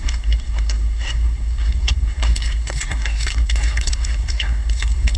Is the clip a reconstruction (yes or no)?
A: yes